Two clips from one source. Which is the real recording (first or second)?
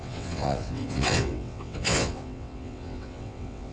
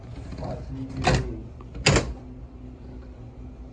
second